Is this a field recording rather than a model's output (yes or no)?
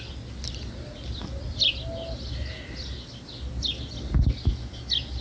yes